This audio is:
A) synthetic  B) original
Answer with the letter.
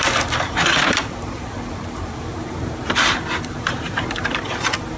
A